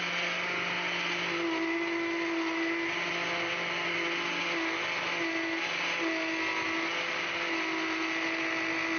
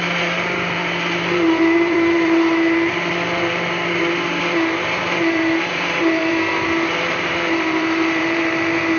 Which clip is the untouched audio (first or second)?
first